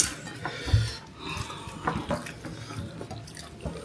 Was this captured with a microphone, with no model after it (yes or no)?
yes